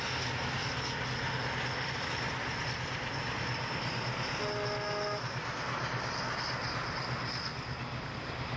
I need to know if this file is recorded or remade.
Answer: recorded